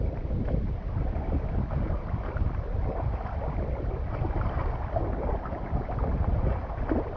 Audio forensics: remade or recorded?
recorded